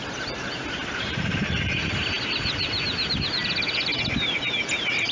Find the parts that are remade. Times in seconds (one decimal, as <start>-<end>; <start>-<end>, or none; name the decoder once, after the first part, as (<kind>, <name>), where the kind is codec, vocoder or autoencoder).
none

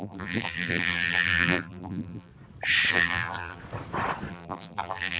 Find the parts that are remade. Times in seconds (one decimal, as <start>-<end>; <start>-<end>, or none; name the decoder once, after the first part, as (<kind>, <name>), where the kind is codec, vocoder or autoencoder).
0.0-2.3 (vocoder, BigVGAN v2); 2.9-3.6; 4.3-5.2

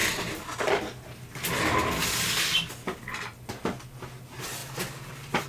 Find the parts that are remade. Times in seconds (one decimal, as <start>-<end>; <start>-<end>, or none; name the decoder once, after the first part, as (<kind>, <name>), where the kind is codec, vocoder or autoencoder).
none

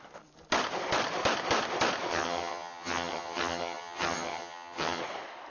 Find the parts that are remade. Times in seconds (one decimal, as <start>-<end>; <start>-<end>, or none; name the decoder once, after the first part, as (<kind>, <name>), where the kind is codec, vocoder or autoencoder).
2.1-5.0 (vocoder, HiFi-GAN)

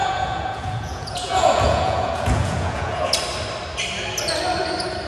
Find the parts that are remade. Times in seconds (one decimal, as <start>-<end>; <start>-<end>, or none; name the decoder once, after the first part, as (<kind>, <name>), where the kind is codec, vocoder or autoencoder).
0.0-3.1 (vocoder, Vocos)

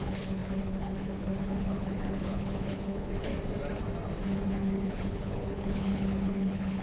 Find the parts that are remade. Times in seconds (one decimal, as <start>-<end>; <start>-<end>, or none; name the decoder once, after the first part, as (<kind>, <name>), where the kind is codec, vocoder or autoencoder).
0.0-3.3 (codec, HILCodec); 4.5-6.8